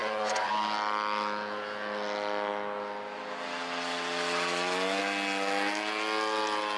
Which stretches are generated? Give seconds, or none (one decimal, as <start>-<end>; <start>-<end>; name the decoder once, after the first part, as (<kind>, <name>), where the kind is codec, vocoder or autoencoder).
0.0-0.5 (vocoder, Vocos)